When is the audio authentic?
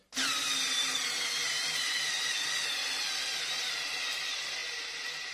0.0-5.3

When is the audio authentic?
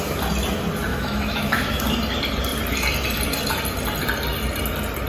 0.0-0.9; 1.8-5.1